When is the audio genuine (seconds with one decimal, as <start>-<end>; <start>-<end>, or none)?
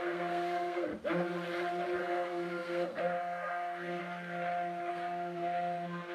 0.9-2.0; 4.0-4.9